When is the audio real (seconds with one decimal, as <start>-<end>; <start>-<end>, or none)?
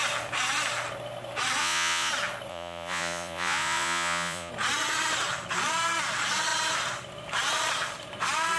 0.0-1.6; 2.1-2.5; 4.5-8.6